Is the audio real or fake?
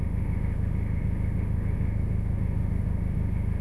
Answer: fake